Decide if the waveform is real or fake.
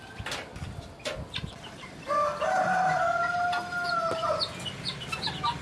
real